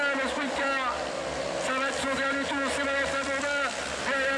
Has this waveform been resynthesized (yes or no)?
no